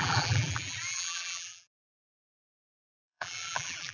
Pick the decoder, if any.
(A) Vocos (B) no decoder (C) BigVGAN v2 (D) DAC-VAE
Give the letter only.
C